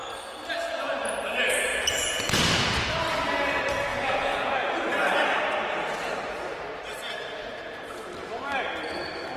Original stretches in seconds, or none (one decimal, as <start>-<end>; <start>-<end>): 0.0-1.7; 2.9-3.9; 4.7-7.4; 8.1-9.4

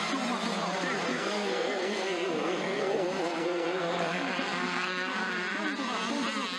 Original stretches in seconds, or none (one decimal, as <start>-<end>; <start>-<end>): 0.0-1.1; 5.1-6.6

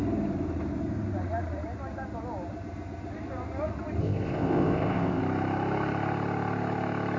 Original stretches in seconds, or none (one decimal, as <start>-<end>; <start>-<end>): 0.0-4.0; 5.2-7.2

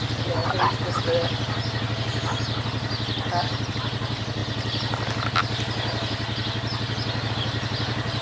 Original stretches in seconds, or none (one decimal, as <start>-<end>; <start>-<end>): 0.4-3.7; 4.4-7.3